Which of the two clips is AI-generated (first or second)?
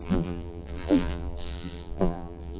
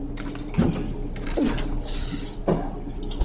first